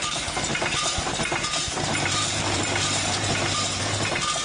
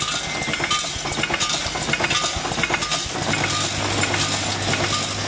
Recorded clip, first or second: second